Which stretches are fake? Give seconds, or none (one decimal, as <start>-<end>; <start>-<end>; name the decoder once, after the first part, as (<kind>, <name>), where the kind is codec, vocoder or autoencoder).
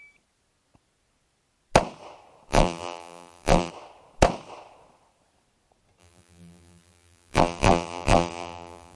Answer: 2.5-3.7 (vocoder, BigVGAN v2); 6.0-9.0